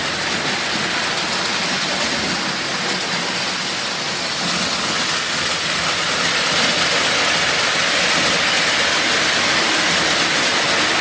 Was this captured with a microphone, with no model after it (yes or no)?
yes